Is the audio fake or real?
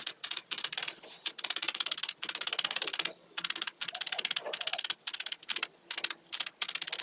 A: real